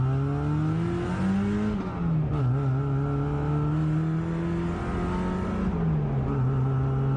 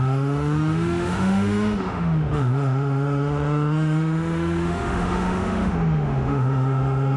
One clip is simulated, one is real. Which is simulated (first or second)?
second